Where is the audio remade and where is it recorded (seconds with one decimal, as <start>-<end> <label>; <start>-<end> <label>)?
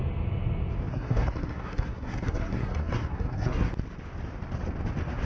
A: 0.0-0.9 recorded; 0.9-3.7 remade; 3.7-5.2 recorded